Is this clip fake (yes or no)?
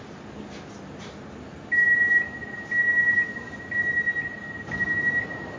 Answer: no